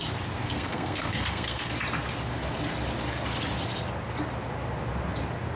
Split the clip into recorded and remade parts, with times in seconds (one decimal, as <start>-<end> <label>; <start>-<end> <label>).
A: 0.0-0.4 recorded; 0.4-1.7 remade; 1.7-5.6 recorded